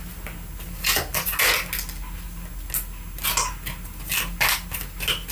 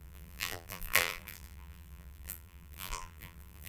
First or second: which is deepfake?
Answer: second